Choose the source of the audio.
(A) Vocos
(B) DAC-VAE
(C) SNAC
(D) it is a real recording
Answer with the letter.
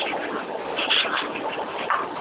D